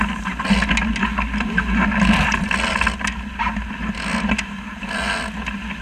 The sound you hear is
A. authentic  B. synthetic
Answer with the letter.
A